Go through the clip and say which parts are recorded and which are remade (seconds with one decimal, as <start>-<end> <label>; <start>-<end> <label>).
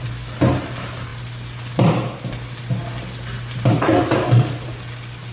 0.0-5.3 recorded